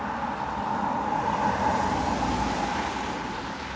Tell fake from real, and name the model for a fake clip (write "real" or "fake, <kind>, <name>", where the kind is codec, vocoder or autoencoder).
real